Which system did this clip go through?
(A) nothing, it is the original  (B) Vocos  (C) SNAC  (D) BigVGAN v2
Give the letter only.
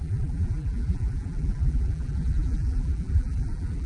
D